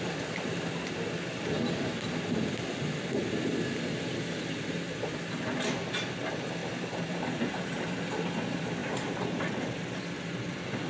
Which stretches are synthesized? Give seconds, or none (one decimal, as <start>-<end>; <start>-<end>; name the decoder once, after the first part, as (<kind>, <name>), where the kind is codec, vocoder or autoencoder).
6.6-7.8 (vocoder, BigVGAN v2); 8.8-9.8